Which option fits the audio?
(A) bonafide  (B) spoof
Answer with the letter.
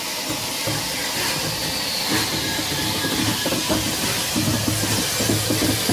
A